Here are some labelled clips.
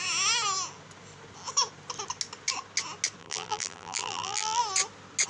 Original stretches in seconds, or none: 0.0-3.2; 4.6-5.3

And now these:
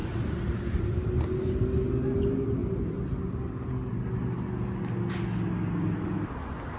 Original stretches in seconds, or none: 0.0-6.8

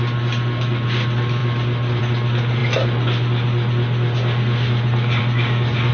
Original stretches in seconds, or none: 0.0-5.9